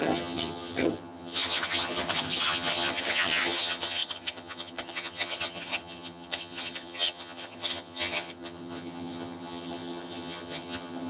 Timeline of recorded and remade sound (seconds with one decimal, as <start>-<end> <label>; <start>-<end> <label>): 0.0-11.1 remade